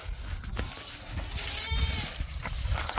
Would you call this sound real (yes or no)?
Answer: yes